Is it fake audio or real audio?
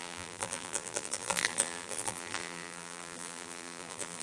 fake